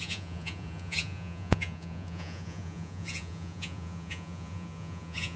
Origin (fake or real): fake